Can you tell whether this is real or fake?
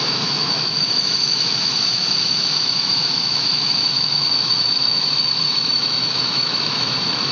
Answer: fake